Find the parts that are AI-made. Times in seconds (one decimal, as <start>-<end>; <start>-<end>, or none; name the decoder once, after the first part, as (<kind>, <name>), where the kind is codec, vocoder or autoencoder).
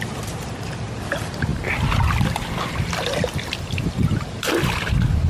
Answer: none